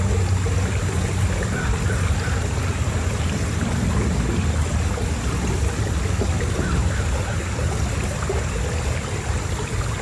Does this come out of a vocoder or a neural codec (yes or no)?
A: no